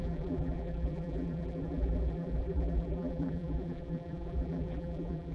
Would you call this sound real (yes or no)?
no